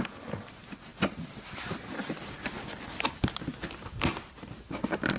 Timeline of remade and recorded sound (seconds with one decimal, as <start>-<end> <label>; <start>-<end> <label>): 0.0-5.2 recorded